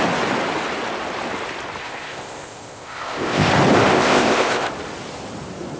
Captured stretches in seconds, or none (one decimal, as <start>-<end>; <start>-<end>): 0.0-1.8; 3.5-3.9; 4.7-5.8

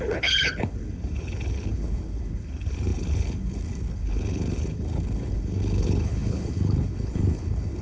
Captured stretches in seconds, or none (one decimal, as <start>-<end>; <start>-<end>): none

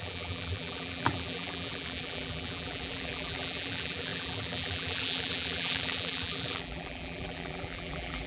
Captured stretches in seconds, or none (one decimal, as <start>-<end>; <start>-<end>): none

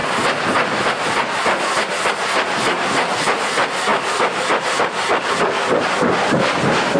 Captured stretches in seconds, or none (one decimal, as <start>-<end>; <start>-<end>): 0.0-7.0

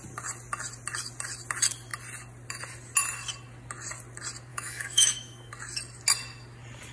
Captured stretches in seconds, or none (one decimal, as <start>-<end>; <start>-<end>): 0.0-4.5; 5.5-6.9

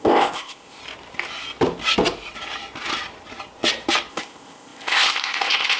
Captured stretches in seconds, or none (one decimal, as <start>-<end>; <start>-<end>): 0.8-4.1

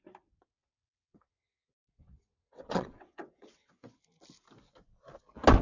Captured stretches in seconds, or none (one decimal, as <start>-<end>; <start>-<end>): 0.0-0.6; 4.0-5.6

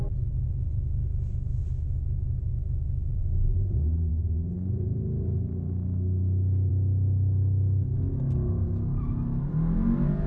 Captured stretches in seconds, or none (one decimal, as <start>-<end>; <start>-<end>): 0.0-2.5; 3.1-4.1; 6.7-10.3